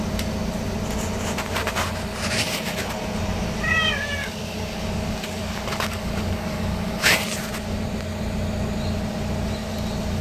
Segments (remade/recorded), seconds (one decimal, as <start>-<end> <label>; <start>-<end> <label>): 0.0-4.2 recorded; 4.2-7.0 remade; 7.0-10.2 recorded